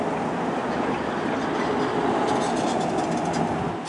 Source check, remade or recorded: recorded